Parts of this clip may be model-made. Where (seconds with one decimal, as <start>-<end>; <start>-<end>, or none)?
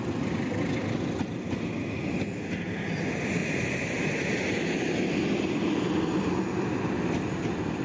3.4-4.0